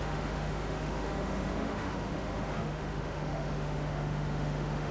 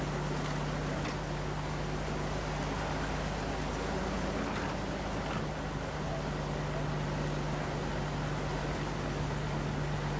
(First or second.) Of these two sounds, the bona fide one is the second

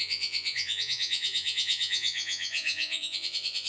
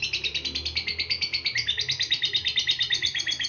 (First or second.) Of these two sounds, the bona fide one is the second